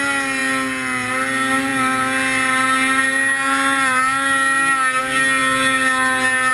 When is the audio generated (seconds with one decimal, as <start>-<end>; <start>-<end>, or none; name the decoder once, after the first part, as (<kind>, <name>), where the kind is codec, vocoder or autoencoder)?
none